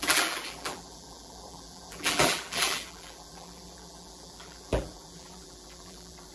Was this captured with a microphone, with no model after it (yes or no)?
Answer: no